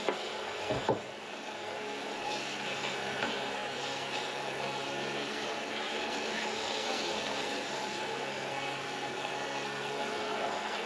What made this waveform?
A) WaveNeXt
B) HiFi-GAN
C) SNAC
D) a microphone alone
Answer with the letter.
C